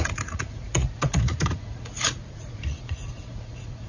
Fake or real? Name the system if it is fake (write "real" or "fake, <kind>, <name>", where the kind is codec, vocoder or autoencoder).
fake, vocoder, Vocos